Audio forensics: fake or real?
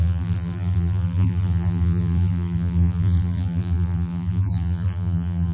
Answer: fake